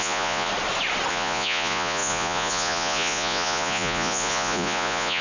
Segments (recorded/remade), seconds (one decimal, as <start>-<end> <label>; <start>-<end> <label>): 0.0-0.5 remade; 0.5-1.1 recorded; 1.1-5.2 remade